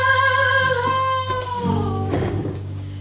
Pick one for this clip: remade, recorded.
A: remade